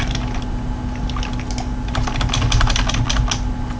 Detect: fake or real real